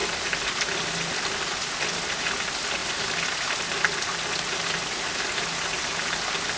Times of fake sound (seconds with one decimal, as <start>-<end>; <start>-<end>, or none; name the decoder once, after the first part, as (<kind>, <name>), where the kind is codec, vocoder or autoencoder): none